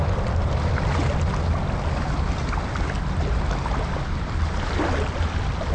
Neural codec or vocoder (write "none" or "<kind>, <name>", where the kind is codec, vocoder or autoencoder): none